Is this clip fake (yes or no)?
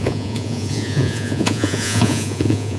yes